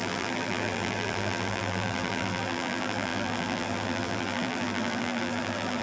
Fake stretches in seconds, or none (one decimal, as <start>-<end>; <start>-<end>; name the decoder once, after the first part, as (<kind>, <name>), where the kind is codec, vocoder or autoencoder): 0.0-5.8 (vocoder, BigVGAN v2)